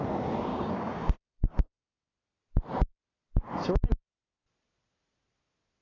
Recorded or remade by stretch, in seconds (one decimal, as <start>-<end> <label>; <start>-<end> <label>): 0.0-0.5 recorded; 0.5-2.1 remade; 2.1-5.8 recorded

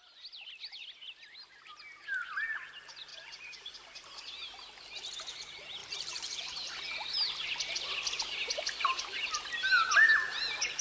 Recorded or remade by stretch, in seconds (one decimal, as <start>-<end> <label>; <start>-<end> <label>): 0.0-3.1 recorded; 3.1-4.2 remade; 4.2-5.8 recorded; 5.8-6.8 remade; 6.8-10.8 recorded

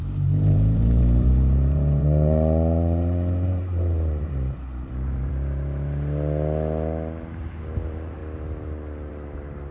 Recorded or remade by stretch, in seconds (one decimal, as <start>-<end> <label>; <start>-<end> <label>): 0.0-5.3 remade; 5.3-9.7 recorded

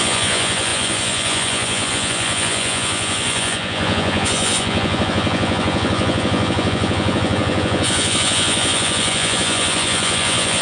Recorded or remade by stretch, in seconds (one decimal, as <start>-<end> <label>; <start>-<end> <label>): 0.0-10.6 remade